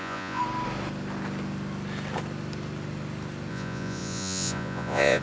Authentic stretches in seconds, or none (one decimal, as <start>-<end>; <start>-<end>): 0.4-3.5